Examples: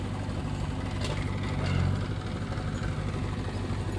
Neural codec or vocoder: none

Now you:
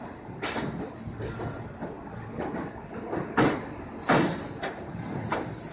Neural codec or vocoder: none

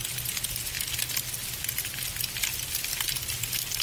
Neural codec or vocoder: none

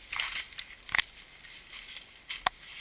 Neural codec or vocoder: none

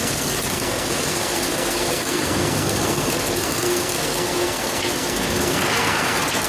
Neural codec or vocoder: codec, SNAC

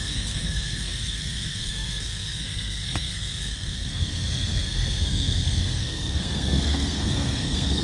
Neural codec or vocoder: codec, SNAC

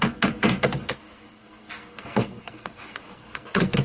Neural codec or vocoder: codec, SNAC